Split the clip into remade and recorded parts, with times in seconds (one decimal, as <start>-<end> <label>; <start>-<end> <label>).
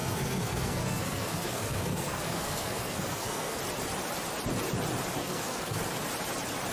0.0-3.6 remade; 3.6-5.2 recorded; 5.2-5.8 remade; 5.8-6.7 recorded